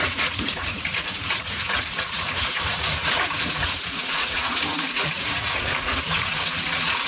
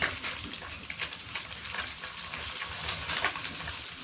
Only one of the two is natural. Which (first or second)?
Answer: second